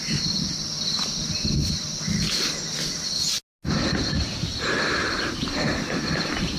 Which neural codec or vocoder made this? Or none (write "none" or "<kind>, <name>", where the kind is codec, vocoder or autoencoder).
none